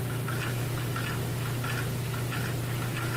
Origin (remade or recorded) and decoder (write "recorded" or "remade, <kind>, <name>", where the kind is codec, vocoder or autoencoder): recorded